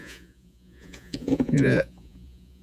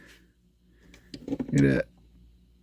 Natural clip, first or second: second